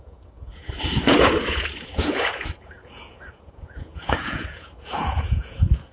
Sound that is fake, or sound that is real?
fake